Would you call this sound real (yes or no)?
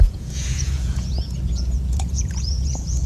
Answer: no